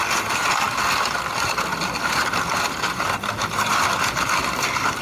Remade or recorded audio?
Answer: recorded